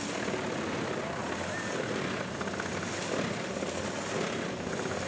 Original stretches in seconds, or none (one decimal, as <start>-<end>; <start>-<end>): 0.0-5.1